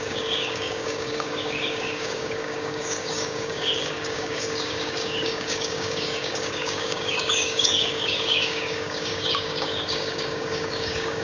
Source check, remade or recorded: remade